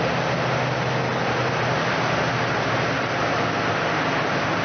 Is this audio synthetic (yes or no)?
no